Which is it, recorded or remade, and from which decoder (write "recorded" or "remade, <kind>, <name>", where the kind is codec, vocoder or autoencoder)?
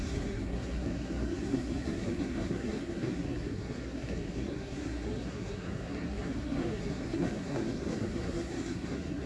remade, codec, SNAC